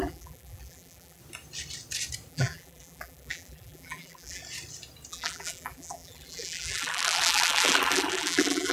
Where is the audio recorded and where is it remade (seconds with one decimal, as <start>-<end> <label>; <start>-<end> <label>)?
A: 0.0-1.2 remade; 1.2-2.3 recorded; 2.3-4.4 remade; 4.4-5.1 recorded; 5.1-8.7 remade